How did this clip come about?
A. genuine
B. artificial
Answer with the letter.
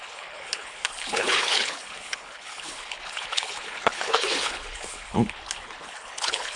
B